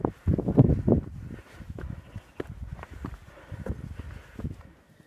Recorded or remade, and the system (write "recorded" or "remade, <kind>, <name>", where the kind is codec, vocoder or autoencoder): recorded